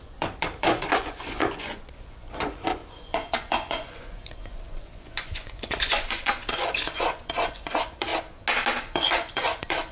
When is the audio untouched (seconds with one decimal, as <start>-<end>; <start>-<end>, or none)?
8.1-8.8